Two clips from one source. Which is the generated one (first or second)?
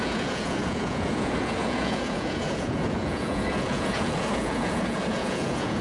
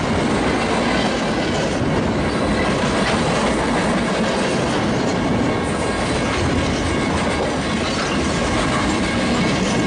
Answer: first